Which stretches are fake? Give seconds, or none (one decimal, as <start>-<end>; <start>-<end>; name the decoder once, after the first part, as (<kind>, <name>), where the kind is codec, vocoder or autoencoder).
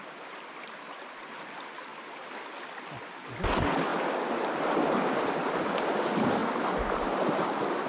none